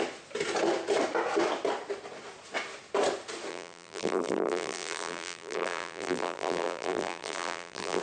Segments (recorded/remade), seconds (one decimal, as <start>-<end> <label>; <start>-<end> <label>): 0.0-3.5 recorded; 3.5-8.0 remade